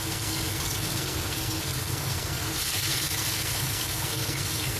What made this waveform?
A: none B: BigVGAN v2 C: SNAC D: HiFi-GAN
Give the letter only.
C